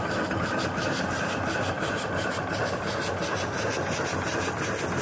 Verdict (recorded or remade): recorded